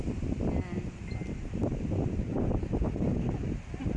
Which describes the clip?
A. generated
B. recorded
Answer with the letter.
B